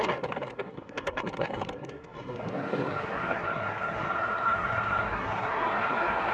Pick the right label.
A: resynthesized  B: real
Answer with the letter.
A